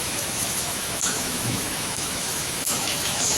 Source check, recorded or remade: remade